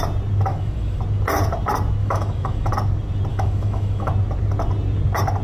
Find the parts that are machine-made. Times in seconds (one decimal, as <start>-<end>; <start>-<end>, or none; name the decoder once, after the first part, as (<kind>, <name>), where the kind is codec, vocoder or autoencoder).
0.5-1.0 (autoencoder, DAC-VAE); 2.0-2.7; 3.3-4.1